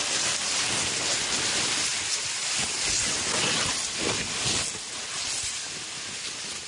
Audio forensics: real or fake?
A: real